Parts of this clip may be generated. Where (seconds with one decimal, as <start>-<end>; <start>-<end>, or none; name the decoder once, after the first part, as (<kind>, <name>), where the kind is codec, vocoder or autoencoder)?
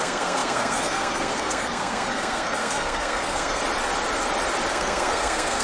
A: 0.0-3.6 (codec, SNAC); 4.7-5.6